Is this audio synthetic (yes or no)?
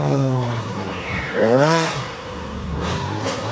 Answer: yes